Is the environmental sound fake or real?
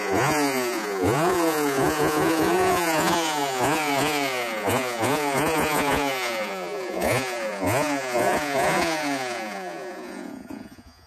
fake